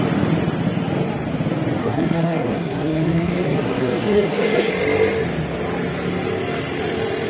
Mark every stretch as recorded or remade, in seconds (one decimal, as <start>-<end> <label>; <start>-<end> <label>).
0.0-1.8 recorded; 1.8-4.7 remade; 4.7-7.3 recorded